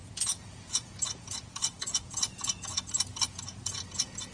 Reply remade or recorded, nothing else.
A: remade